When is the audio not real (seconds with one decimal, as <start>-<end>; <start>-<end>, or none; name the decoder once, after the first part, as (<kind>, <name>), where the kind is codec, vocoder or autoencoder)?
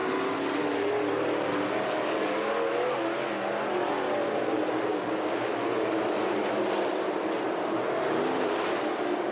4.9-5.5 (codec, DAC)